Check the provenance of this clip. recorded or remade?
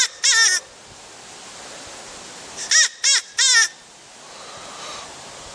recorded